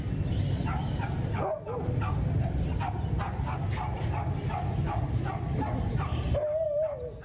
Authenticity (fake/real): real